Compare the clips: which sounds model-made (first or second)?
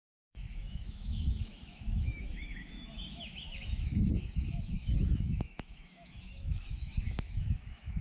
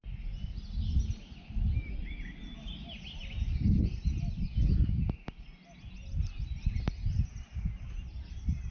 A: first